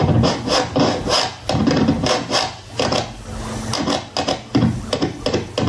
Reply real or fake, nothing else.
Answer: real